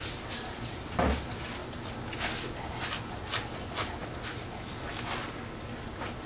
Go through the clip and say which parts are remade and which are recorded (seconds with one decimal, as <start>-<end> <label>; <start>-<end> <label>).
0.0-6.3 recorded